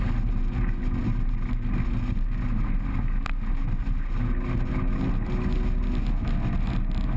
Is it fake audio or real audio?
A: real